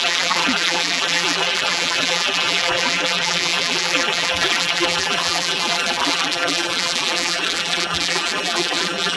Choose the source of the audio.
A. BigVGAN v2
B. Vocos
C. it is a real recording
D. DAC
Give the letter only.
A